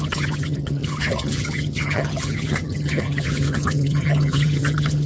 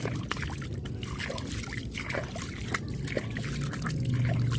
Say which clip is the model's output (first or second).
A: first